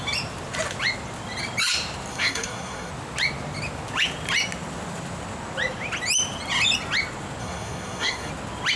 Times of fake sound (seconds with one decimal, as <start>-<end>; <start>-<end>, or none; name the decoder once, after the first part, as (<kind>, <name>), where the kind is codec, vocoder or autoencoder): 2.1-2.9 (codec, SNAC); 7.4-8.3